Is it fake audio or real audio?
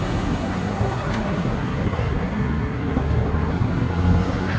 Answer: fake